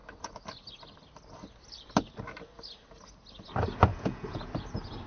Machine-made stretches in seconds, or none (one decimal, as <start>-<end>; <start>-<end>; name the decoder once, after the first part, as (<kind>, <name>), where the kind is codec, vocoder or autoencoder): 3.9-4.5 (vocoder, Vocos)